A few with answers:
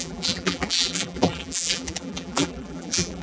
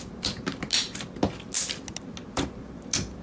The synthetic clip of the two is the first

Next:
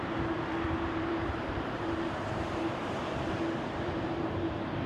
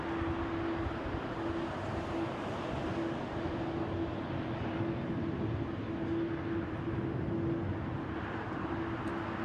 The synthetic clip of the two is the first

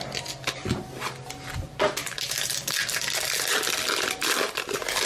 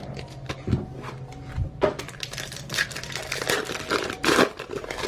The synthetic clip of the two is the second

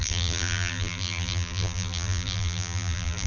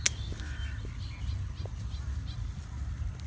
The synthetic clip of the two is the first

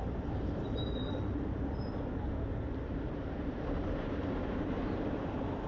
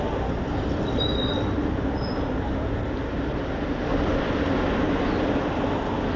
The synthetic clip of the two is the first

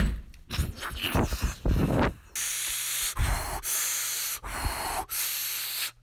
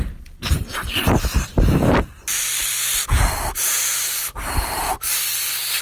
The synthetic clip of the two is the second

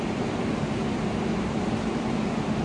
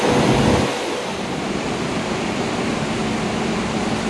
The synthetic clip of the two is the first